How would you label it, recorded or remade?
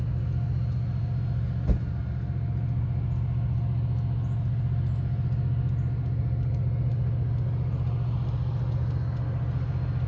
recorded